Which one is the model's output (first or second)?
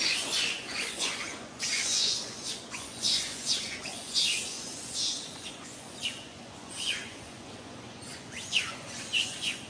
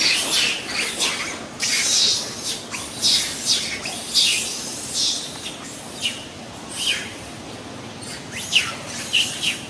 first